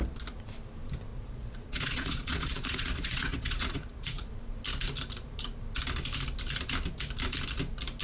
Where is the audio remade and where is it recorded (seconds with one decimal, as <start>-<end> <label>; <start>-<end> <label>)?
0.0-1.1 recorded; 1.1-4.3 remade; 4.3-8.0 recorded